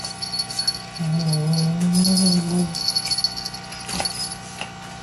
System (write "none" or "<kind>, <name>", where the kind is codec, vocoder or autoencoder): none